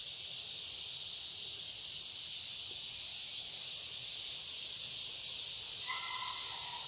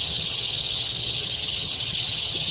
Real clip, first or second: first